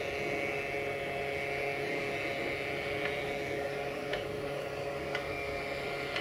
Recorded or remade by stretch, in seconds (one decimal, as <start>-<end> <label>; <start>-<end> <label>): 0.0-1.6 recorded; 1.6-2.1 remade; 2.1-3.2 recorded; 3.2-5.6 remade; 5.6-6.2 recorded